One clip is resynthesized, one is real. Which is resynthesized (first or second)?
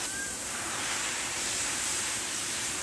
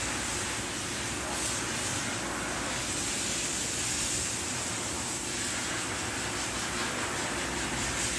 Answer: first